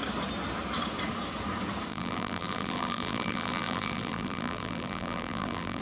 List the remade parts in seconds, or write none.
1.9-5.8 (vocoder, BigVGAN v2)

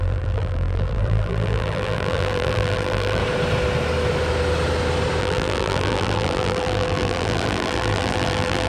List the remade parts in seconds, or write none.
0.0-3.2 (vocoder, BigVGAN v2); 5.2-8.7